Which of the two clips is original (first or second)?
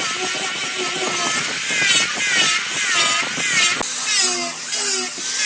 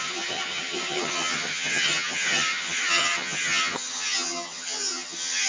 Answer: first